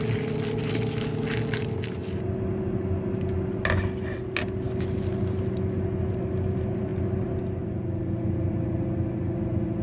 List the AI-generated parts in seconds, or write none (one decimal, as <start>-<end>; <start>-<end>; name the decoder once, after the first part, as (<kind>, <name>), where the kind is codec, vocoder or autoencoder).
none